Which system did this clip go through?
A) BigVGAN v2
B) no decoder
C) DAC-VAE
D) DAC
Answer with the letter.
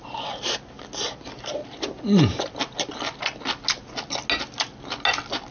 B